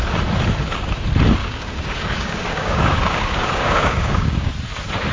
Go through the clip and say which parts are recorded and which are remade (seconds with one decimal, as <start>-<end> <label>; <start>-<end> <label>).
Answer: 0.0-1.4 recorded; 1.4-4.5 remade; 4.5-5.1 recorded